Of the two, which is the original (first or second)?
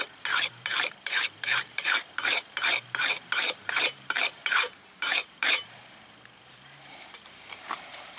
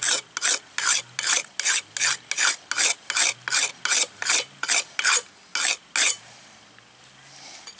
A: second